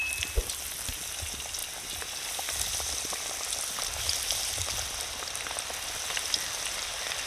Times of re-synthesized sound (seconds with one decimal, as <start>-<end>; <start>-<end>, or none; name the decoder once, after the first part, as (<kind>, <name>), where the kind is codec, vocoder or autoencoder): none